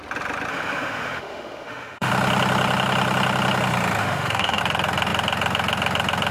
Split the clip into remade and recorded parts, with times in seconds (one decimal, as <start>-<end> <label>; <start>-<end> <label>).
0.0-0.5 recorded; 0.5-2.1 remade; 2.1-4.0 recorded; 4.0-4.6 remade; 4.6-6.3 recorded